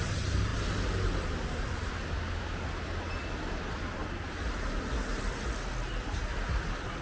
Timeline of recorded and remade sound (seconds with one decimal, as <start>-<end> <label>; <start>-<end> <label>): 0.0-7.0 recorded

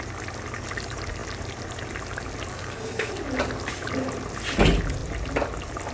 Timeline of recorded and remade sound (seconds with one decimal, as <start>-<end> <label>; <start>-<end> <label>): 0.0-2.5 recorded; 2.5-3.1 remade; 3.1-5.9 recorded

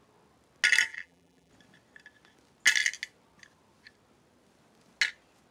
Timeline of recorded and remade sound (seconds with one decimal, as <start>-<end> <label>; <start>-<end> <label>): 0.0-0.9 recorded; 0.9-1.5 remade; 1.5-5.5 recorded

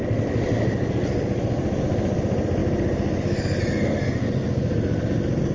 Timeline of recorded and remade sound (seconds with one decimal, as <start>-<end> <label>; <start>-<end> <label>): 0.0-5.5 recorded